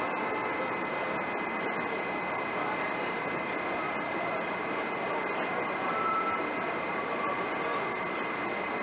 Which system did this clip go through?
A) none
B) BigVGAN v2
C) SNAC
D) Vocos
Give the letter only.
A